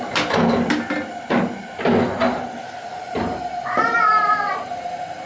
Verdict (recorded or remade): recorded